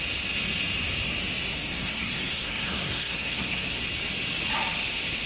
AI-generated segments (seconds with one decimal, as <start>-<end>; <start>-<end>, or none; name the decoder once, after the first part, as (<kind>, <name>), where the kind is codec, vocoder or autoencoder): 1.5-3.9 (codec, SNAC)